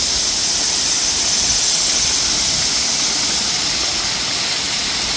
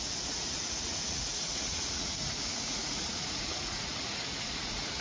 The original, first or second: first